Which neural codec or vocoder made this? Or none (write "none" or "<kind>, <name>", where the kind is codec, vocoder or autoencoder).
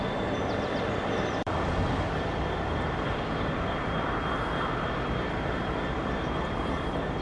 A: vocoder, BigVGAN v2